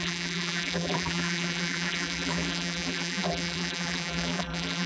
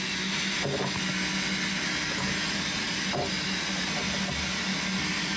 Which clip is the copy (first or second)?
first